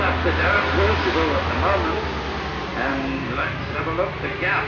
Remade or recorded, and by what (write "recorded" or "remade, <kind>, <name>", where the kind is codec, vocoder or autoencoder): recorded